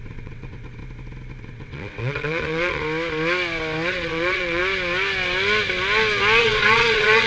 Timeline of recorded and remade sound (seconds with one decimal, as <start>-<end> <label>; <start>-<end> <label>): 0.0-0.8 remade; 0.8-1.4 recorded; 1.4-2.8 remade; 2.8-3.9 recorded; 3.9-4.6 remade; 4.6-6.4 recorded; 6.4-7.3 remade

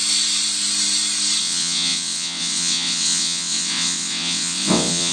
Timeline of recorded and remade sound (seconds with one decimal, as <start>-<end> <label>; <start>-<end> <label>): 0.0-1.4 recorded; 1.4-5.1 remade

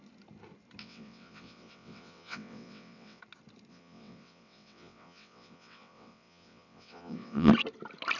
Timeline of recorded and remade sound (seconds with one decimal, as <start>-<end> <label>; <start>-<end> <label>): 0.0-0.8 recorded; 0.8-3.2 remade; 3.2-3.7 recorded; 3.7-7.5 remade; 7.5-8.2 recorded

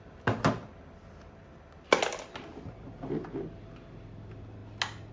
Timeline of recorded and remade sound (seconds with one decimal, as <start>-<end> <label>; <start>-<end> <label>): 0.0-5.1 recorded

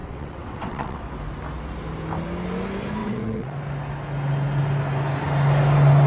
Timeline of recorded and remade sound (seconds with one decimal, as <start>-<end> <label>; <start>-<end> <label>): 0.0-1.0 remade; 1.0-3.0 recorded; 3.0-3.6 remade; 3.6-6.1 recorded